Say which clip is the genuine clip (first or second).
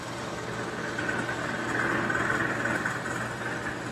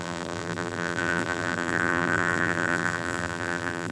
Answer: first